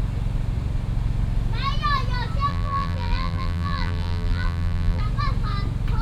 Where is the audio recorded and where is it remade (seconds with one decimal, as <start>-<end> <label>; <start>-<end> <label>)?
0.0-2.5 recorded; 2.5-5.0 remade; 5.0-6.0 recorded